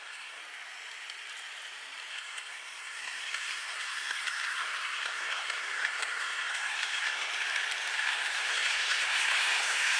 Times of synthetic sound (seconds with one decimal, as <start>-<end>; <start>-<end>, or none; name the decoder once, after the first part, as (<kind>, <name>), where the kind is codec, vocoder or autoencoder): 0.0-0.4 (codec, SNAC); 2.1-7.3; 7.9-10.0